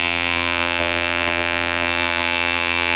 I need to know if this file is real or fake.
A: fake